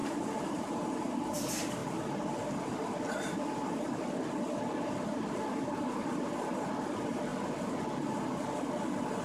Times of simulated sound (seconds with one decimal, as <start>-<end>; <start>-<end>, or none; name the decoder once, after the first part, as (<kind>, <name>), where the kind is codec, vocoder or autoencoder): 0.0-1.1 (vocoder, BigVGAN v2)